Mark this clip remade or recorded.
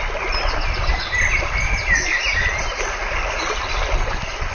recorded